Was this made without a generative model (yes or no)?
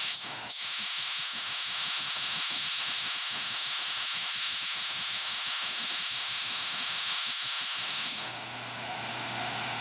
no